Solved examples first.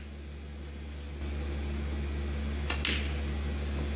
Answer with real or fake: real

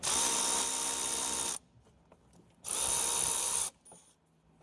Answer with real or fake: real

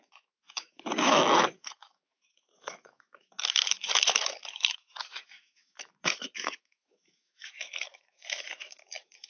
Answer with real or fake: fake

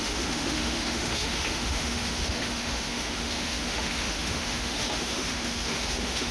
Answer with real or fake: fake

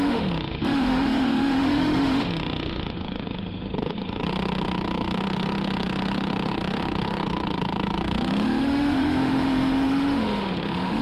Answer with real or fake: fake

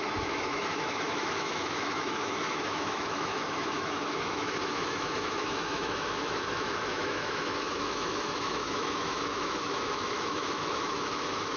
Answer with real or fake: fake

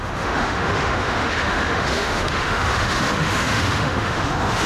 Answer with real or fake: fake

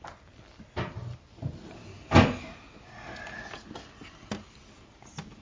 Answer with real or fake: real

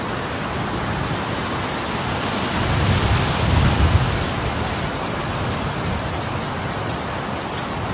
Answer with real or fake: real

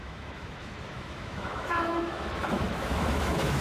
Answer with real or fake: fake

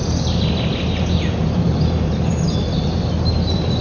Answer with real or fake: real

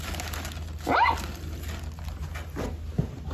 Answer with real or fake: real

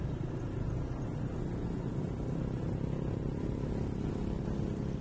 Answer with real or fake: real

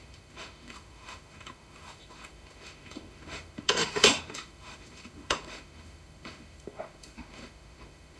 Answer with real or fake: fake